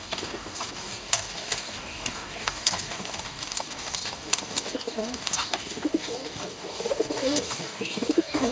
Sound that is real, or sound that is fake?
fake